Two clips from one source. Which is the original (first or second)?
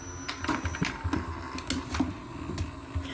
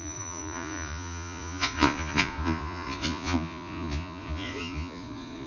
first